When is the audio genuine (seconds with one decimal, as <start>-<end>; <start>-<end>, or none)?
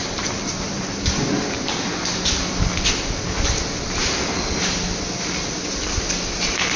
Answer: 0.0-6.8